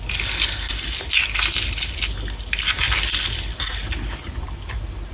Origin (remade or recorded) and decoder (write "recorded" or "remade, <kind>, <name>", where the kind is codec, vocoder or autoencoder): recorded